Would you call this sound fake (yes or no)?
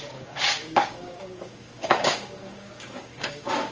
yes